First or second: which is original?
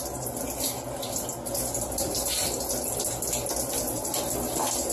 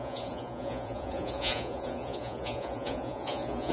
first